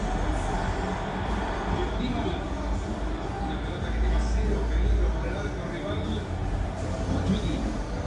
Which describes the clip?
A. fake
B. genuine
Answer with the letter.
B